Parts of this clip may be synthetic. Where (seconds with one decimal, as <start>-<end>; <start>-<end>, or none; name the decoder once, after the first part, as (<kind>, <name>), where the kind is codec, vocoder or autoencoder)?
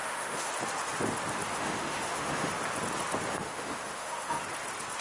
0.0-0.5 (autoencoder, DAC-VAE); 1.5-2.5; 3.3-4.4